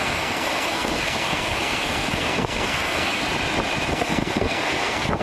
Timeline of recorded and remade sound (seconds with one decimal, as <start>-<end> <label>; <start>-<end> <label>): 0.0-3.2 remade; 3.2-3.9 recorded; 3.9-5.2 remade